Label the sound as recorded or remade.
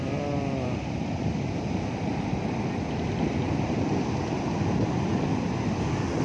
recorded